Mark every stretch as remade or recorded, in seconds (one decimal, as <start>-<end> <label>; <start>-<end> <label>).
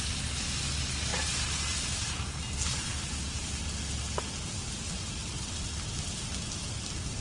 0.0-7.2 recorded